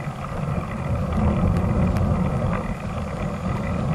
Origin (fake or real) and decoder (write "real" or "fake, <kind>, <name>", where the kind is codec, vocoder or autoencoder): real